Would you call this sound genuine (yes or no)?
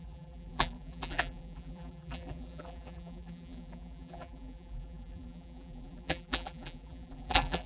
no